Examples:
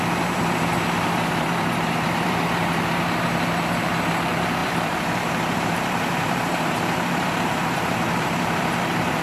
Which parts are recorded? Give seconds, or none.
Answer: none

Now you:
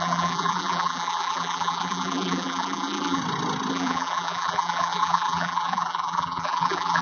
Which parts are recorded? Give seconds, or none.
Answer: 3.2-3.7

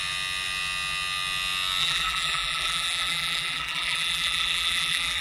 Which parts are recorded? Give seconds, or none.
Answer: 0.0-1.8